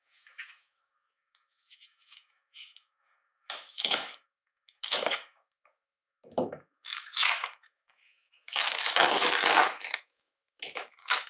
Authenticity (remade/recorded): remade